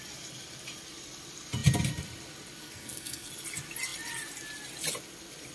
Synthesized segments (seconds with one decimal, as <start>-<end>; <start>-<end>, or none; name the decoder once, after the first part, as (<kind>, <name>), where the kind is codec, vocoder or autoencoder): 2.6-3.3 (codec, SNAC)